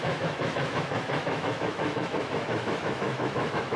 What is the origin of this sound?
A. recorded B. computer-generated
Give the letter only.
B